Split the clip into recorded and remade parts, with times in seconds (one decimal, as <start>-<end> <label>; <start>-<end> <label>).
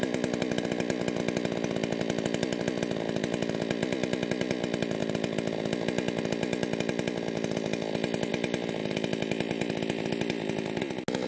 0.0-11.3 recorded